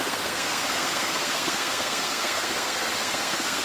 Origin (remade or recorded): remade